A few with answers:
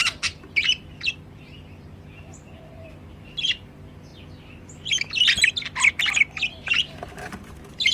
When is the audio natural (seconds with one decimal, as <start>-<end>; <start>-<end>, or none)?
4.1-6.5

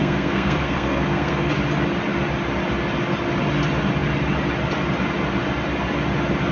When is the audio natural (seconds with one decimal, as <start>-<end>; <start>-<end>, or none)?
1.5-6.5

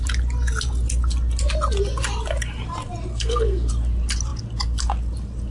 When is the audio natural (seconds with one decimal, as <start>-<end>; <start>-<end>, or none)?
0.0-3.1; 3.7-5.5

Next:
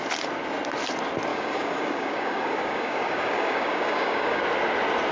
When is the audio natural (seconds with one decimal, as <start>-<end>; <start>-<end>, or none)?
0.0-1.3; 4.4-5.1

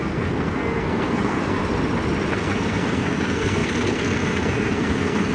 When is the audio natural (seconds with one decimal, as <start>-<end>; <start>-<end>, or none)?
1.6-2.3